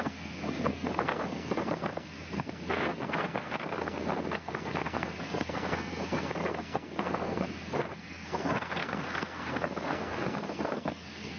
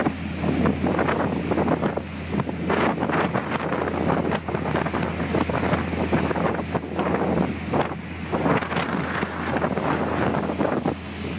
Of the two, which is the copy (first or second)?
first